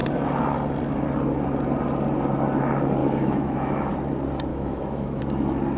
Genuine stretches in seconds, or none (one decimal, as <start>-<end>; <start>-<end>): 0.0-3.0; 3.9-4.5; 5.2-5.8